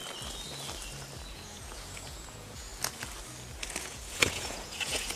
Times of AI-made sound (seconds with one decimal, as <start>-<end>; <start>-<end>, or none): 1.3-2.7; 3.8-5.2